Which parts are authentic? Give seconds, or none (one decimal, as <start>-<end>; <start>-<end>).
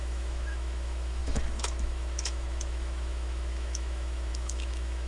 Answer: none